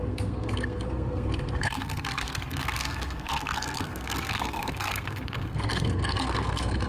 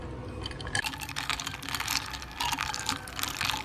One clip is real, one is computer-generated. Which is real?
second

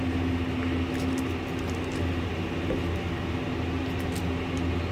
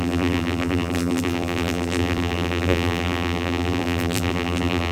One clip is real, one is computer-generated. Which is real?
first